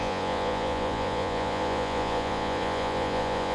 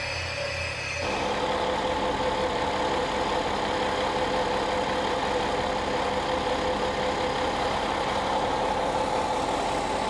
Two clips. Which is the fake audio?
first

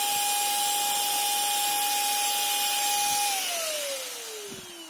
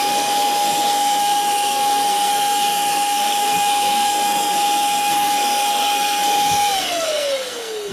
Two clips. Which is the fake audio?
second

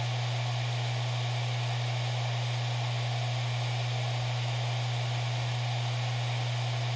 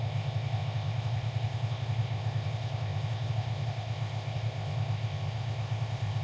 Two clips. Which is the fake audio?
second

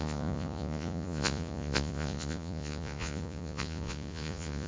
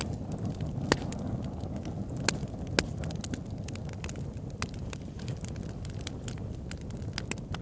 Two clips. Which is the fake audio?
first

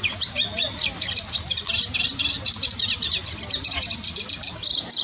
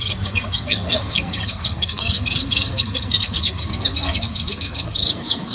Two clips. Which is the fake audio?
second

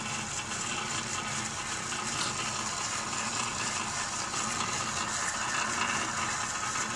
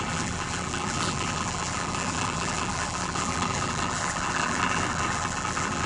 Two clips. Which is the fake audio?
second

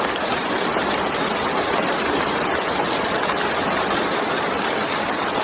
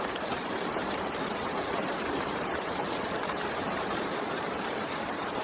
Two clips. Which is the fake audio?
second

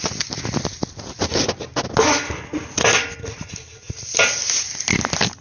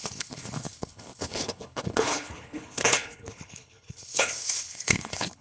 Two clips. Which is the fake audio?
second